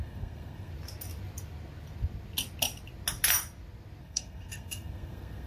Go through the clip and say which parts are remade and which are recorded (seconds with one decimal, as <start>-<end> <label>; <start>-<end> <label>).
0.0-0.7 remade; 0.7-4.0 recorded; 4.0-5.5 remade